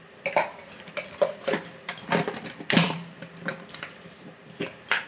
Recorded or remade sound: remade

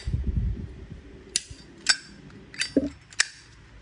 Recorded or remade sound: recorded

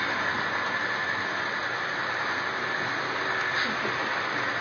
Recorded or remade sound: recorded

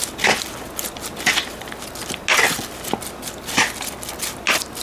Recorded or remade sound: recorded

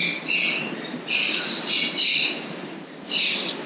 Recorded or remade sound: recorded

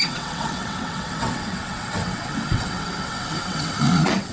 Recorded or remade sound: remade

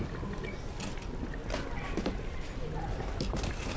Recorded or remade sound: recorded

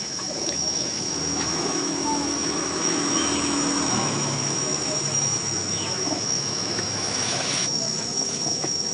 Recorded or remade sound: remade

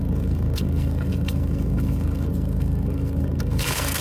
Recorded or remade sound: remade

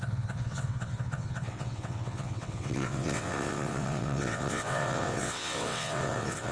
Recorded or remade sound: remade